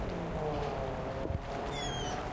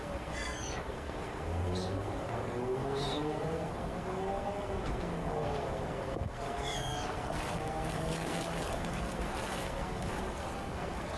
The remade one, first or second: second